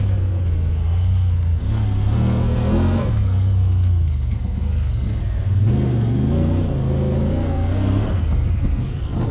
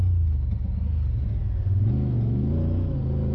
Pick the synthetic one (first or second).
first